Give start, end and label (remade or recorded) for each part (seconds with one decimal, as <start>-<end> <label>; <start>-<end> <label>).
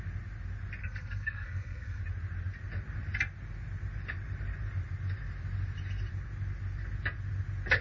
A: 0.0-0.8 recorded; 0.8-2.0 remade; 2.0-7.8 recorded